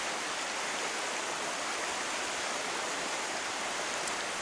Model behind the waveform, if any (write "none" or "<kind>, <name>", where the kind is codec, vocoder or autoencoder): vocoder, BigVGAN v2